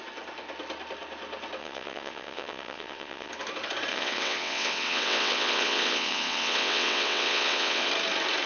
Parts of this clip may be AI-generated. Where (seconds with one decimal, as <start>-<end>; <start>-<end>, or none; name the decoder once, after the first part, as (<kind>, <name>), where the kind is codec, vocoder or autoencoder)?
1.6-3.3 (vocoder, WaveNeXt); 3.9-7.9

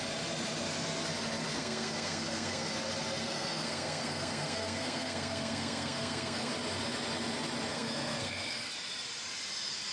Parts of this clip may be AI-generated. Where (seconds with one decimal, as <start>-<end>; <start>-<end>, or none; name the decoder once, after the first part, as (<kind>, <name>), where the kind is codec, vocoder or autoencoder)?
1.5-2.7 (codec, SNAC); 3.2-6.5; 7.7-8.7

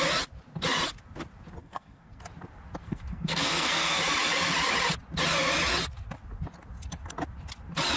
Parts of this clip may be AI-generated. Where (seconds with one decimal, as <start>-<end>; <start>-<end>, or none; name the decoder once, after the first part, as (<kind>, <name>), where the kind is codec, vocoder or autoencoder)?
1.6-2.2 (codec, SNAC); 2.8-4.0

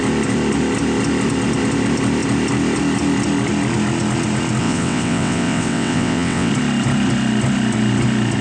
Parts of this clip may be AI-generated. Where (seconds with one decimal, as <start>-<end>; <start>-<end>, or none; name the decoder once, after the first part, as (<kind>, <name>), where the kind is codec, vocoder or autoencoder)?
4.6-6.5 (vocoder, WaveNeXt)

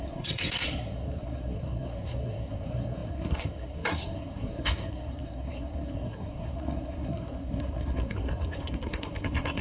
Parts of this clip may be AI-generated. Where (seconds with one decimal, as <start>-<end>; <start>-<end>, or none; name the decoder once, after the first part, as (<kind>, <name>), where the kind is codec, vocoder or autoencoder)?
0.0-9.6 (codec, SNAC)

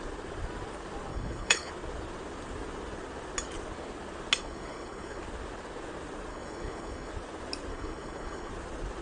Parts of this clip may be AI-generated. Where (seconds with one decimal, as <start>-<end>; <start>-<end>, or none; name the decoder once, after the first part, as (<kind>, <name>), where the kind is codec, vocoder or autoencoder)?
1.1-1.7 (codec, HILCodec); 4.4-5.2; 6.3-7.1; 7.7-8.5

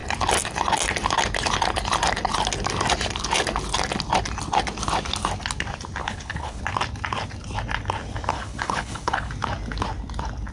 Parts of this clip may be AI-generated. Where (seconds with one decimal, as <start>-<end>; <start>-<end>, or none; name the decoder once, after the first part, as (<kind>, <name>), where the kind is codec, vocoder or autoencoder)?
6.0-6.6 (codec, HILCodec); 8.3-9.3

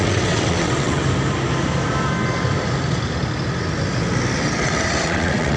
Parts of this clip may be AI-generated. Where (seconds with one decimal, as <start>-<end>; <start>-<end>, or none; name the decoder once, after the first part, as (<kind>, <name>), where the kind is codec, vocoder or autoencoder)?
0.0-1.0 (vocoder, WaveNeXt); 4.4-5.6